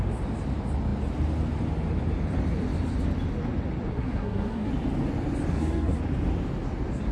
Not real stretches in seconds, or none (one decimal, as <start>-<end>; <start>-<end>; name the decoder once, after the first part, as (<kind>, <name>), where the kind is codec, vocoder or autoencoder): 3.9-4.7 (codec, SNAC); 5.5-6.0